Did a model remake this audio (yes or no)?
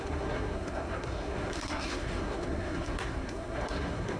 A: yes